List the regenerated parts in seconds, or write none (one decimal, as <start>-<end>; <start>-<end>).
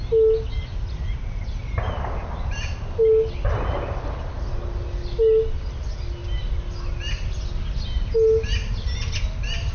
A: none